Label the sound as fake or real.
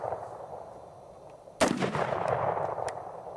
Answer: real